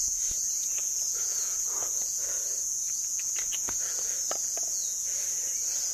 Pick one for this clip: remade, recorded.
remade